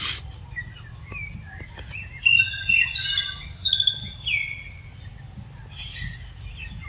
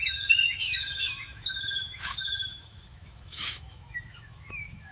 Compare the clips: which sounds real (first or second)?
first